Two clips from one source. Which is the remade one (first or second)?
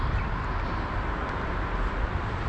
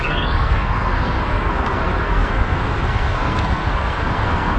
second